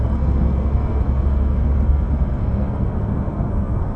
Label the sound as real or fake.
fake